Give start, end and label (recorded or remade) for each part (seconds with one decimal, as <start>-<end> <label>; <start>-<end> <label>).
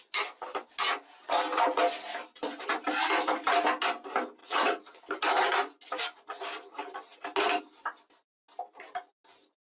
0.0-4.4 recorded; 4.4-5.0 remade; 5.0-9.6 recorded